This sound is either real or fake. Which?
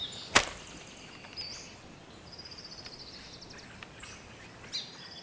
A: real